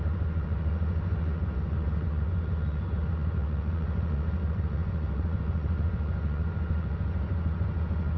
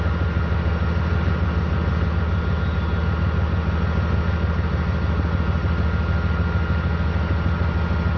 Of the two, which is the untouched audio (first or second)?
second